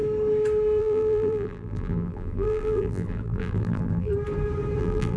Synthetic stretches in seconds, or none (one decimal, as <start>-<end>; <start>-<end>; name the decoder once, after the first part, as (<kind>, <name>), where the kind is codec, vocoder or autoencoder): 0.8-4.1 (vocoder, BigVGAN v2); 4.8-5.2